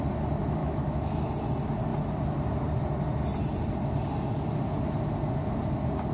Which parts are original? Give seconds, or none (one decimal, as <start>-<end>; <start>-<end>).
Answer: 0.0-0.6; 1.3-6.1